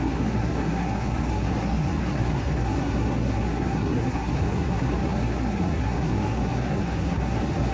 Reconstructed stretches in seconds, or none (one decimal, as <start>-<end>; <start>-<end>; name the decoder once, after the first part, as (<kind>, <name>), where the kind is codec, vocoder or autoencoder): 0.0-7.7 (codec, SNAC)